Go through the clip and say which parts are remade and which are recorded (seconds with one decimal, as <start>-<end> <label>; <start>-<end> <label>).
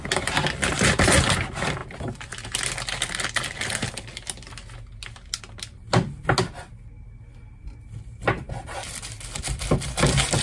0.0-10.4 recorded